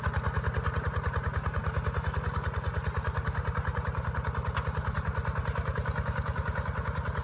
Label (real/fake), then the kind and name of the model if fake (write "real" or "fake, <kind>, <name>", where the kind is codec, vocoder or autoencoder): real